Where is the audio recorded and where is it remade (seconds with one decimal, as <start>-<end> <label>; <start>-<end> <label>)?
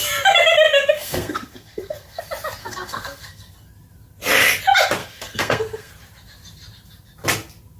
0.0-0.7 recorded; 0.7-2.2 remade; 2.2-2.6 recorded; 2.6-3.5 remade; 3.5-5.0 recorded; 5.0-5.9 remade; 5.9-7.8 recorded